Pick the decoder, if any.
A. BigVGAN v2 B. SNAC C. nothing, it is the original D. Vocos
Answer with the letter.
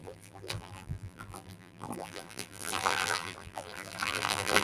A